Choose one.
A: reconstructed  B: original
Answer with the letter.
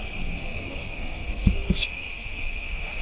A